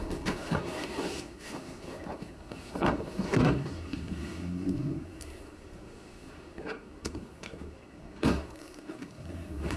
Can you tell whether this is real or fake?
fake